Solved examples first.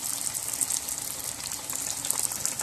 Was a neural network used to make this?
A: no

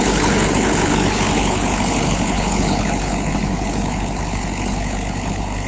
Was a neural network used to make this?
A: yes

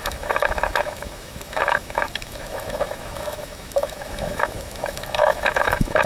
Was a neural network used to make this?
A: yes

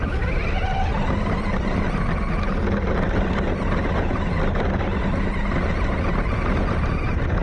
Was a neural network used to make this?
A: no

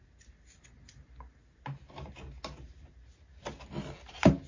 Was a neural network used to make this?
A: no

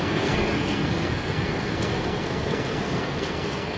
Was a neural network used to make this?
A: yes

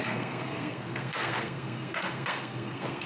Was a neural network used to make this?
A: yes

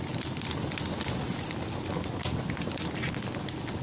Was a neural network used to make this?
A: no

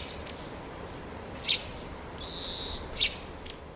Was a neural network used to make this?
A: no